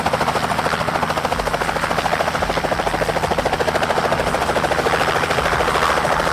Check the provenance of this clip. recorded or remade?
recorded